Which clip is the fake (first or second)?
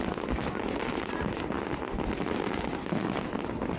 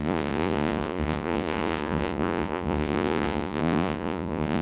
second